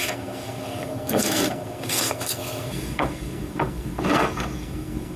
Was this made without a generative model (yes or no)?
no